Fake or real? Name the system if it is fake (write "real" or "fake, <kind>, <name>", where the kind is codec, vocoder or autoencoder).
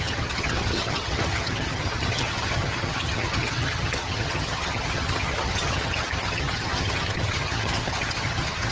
fake, vocoder, HiFi-GAN